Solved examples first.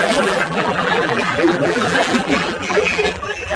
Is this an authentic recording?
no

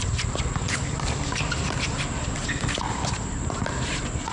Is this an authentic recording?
no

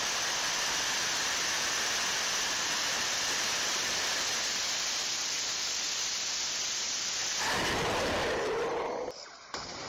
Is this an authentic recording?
yes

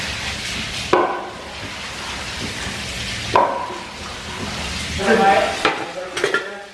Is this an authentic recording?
yes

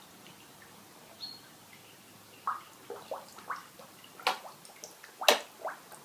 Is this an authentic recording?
yes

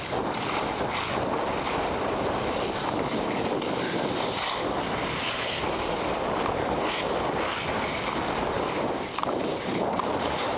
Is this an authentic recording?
yes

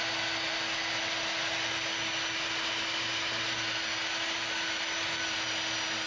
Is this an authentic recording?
yes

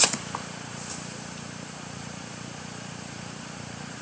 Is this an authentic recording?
no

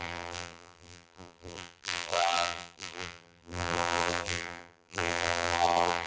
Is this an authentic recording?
no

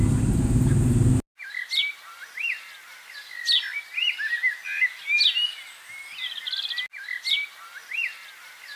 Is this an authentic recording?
yes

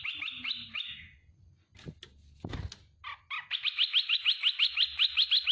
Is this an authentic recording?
yes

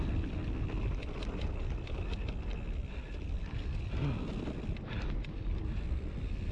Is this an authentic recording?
yes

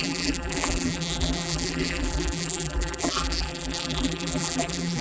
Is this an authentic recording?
no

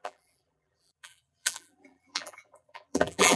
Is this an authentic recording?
no